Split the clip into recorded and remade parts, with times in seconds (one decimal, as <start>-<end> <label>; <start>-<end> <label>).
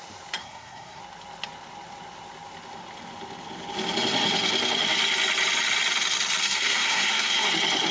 0.0-0.4 recorded; 0.4-1.0 remade; 1.0-6.4 recorded; 6.4-7.5 remade; 7.5-7.9 recorded